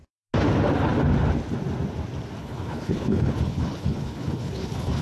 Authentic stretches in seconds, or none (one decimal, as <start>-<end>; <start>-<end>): 0.0-2.4